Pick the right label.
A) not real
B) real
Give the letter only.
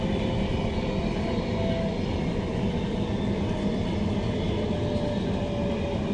B